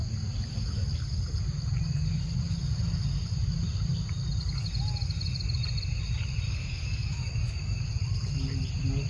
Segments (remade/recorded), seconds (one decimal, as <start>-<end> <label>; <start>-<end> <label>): 0.0-6.5 recorded; 6.5-7.9 remade; 7.9-9.1 recorded